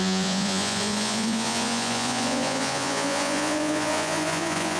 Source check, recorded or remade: remade